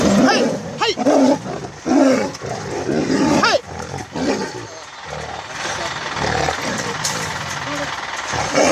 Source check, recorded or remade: recorded